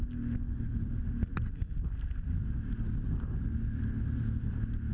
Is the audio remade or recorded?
recorded